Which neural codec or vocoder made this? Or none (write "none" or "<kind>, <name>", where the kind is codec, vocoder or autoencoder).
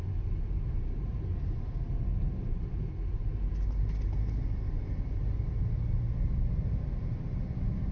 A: none